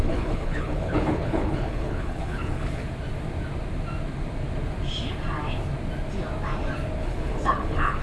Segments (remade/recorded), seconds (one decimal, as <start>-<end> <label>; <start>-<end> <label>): 0.0-2.8 remade; 2.8-7.0 recorded; 7.0-8.0 remade